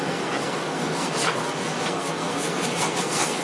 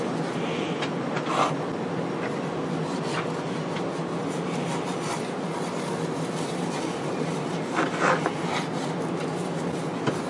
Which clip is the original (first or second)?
second